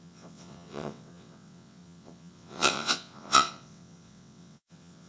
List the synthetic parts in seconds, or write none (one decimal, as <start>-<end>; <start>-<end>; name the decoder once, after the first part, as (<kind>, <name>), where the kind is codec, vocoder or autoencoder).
0.0-5.1 (vocoder, WaveNeXt)